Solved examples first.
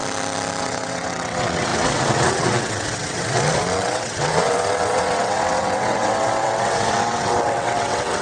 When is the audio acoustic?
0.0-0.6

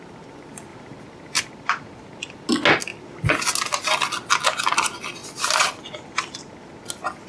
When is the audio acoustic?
0.0-0.7; 2.5-5.2; 6.4-7.3

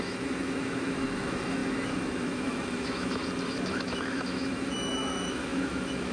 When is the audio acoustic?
3.2-3.7

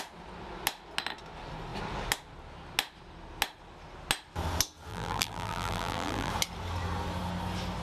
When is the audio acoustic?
0.0-4.9; 6.3-7.8

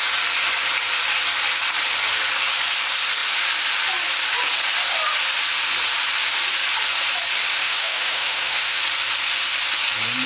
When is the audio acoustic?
0.0-7.5; 8.8-10.3

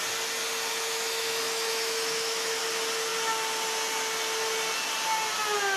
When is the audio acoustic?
0.0-0.7; 2.6-5.8